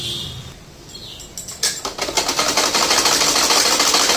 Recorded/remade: recorded